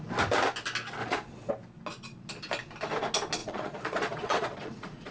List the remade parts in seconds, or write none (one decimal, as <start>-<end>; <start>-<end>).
1.0-1.5; 3.4-5.1